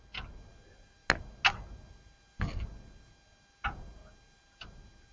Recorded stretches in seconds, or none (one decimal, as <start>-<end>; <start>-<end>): 0.0-5.1

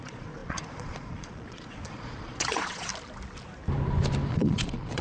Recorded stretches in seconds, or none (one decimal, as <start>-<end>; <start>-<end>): 2.9-4.3